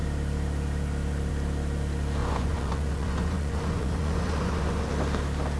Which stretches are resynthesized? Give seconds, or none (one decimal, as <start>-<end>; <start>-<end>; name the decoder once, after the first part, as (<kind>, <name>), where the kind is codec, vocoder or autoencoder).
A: 2.2-4.9 (vocoder, Vocos)